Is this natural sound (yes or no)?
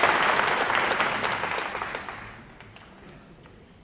yes